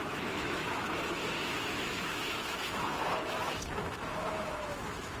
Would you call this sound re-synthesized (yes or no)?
yes